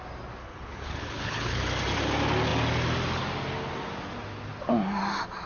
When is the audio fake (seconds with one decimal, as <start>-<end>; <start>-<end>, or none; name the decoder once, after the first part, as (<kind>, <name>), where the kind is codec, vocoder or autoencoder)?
0.4-1.6 (codec, HILCodec)

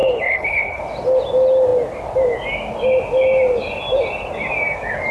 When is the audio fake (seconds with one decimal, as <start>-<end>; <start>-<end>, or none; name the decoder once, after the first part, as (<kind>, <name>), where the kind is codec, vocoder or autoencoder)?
0.0-0.8 (codec, HILCodec)

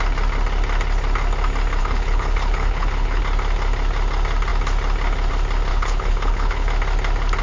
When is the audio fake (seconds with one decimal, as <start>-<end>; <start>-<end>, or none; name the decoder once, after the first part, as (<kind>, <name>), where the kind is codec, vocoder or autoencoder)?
1.8-3.2 (codec, HILCodec); 5.7-6.7